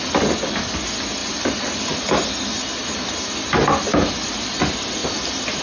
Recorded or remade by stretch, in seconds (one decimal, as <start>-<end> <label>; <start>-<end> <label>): 0.0-5.0 recorded; 5.0-5.6 remade